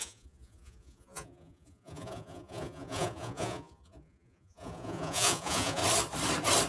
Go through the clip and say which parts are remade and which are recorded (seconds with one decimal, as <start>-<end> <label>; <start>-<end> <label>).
0.0-5.8 remade; 5.8-6.7 recorded